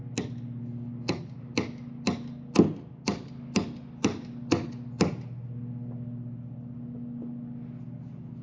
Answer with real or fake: real